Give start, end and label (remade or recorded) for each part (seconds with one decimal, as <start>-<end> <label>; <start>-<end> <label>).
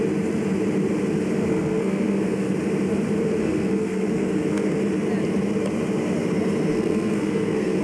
0.0-1.5 recorded; 1.5-2.5 remade; 2.5-3.4 recorded; 3.4-4.8 remade; 4.8-6.7 recorded; 6.7-7.8 remade